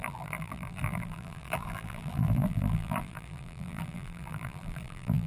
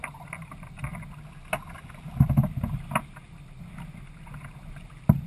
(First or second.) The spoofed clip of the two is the first